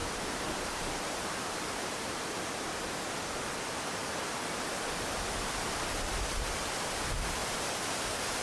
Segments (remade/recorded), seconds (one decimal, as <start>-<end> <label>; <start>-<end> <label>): 0.0-2.6 remade; 2.6-7.4 recorded; 7.4-8.0 remade; 8.0-8.4 recorded